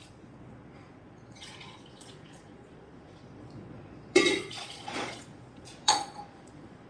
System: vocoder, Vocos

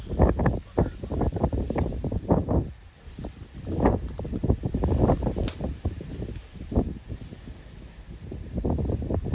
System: none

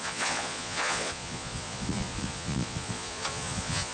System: vocoder, Vocos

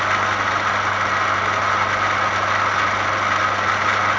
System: none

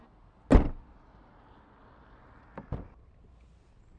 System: none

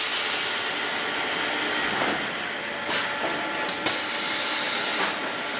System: none